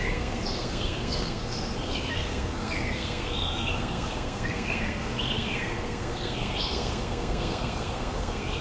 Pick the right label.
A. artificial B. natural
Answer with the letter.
A